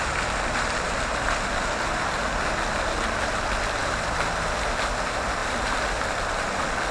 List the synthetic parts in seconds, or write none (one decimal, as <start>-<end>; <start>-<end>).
none